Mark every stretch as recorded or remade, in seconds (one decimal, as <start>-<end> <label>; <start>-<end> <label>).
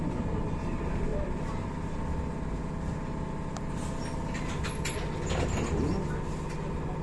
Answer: 0.0-7.0 recorded